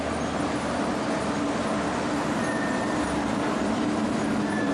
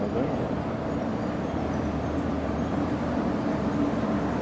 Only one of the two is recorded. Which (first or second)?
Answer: first